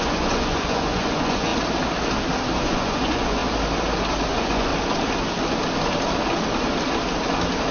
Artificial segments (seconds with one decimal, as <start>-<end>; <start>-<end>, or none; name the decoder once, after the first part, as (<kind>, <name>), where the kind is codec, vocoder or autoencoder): 0.0-1.5 (vocoder, Vocos); 2.6-3.4; 4.3-4.7